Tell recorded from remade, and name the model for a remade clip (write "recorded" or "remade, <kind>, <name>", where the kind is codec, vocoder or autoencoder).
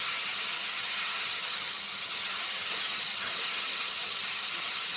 remade, vocoder, HiFi-GAN